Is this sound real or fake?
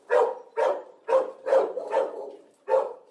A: real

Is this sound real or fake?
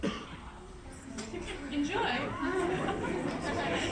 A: real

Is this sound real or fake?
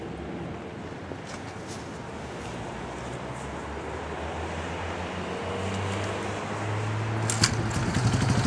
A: real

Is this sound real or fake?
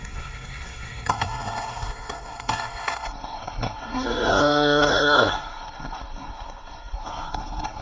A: fake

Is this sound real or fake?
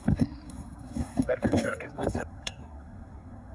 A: fake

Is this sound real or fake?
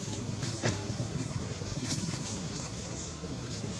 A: fake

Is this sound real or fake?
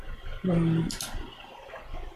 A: real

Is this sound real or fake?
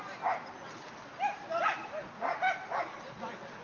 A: real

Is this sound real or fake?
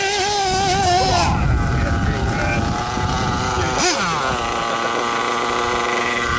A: real